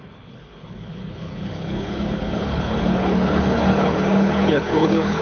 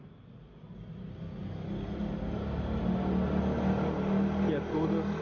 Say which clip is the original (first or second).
second